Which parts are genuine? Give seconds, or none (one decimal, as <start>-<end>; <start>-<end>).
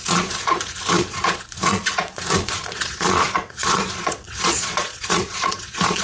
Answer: none